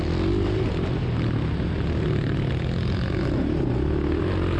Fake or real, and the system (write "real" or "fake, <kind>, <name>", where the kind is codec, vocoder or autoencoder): real